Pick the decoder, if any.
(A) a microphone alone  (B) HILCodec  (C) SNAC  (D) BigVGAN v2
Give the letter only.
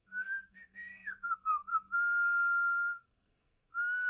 C